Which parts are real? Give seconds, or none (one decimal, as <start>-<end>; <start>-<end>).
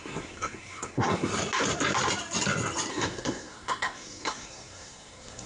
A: 1.3-2.9